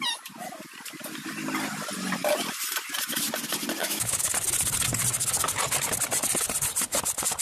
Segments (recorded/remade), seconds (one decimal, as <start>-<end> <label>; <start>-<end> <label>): 0.0-3.8 recorded; 3.8-4.3 remade; 4.3-7.4 recorded